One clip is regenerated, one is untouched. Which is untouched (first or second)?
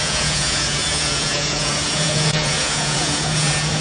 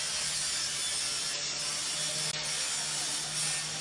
second